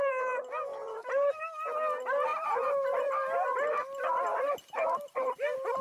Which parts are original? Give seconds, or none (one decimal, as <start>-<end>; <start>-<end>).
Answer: 0.0-0.7; 1.4-4.3